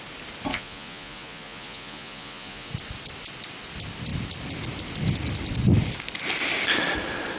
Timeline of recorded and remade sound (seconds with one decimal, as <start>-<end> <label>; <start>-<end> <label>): 0.0-0.5 recorded; 0.5-2.7 remade; 2.7-7.4 recorded